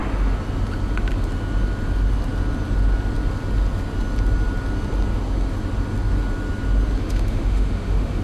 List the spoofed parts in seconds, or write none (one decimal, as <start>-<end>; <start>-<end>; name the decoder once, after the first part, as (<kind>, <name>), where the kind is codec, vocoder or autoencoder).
7.0-8.2 (autoencoder, DAC-VAE)